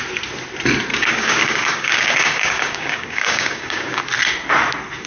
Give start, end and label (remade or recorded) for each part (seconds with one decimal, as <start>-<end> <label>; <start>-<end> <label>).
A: 0.0-0.9 recorded; 0.9-4.0 remade; 4.0-5.1 recorded